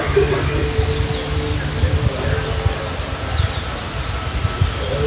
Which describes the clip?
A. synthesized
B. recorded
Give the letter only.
B